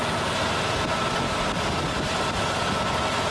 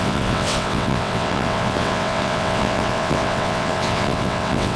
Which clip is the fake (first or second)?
second